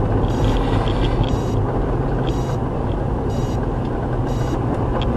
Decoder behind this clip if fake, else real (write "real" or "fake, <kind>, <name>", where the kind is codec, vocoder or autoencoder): real